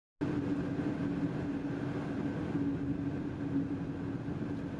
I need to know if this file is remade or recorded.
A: recorded